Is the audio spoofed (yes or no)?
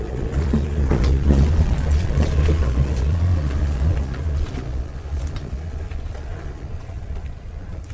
yes